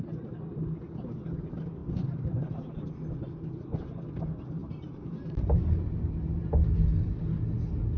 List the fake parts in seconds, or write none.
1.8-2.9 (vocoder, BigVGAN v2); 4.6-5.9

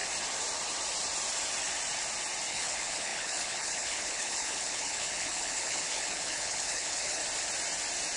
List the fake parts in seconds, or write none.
2.5-7.2 (codec, HILCodec)

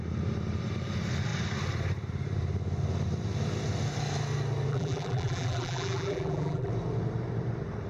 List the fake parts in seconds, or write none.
4.7-6.7 (vocoder, BigVGAN v2)

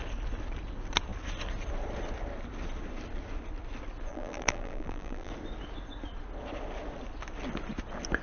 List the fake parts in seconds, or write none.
4.1-5.3 (vocoder, BigVGAN v2)

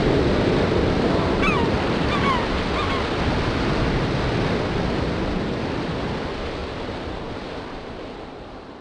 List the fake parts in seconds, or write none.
6.6-8.8 (vocoder, BigVGAN v2)

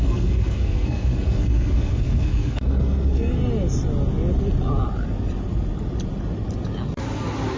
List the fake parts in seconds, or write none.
0.0-3.4 (codec, SNAC)